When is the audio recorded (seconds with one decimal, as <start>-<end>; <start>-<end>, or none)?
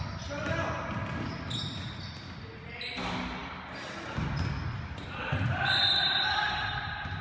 0.0-7.2